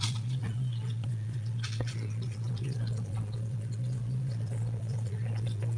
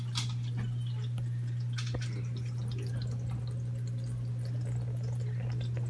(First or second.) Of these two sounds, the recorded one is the second